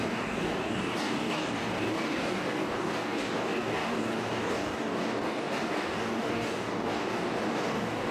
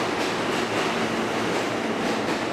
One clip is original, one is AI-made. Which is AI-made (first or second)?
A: first